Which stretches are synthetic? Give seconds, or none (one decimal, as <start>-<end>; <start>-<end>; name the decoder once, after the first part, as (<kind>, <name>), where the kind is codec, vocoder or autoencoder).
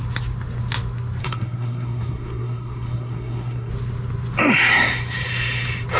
1.2-3.7 (codec, SNAC)